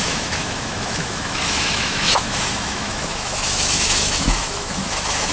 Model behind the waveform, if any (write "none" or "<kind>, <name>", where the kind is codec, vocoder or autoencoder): autoencoder, DAC-VAE